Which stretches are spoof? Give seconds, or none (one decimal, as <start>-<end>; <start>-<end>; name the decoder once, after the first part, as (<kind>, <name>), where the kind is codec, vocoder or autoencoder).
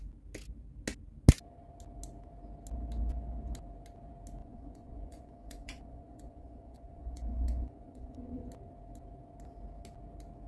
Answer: 4.4-8.5 (vocoder, Vocos)